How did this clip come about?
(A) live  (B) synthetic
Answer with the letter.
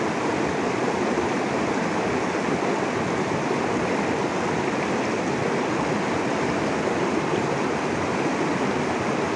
A